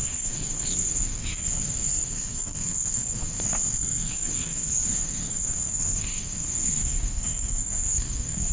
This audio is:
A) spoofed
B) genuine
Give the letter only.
A